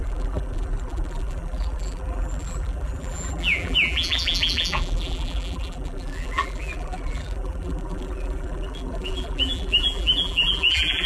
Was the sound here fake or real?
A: fake